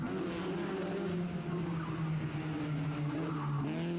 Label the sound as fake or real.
real